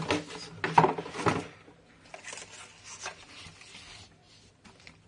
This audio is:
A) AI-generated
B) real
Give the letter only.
B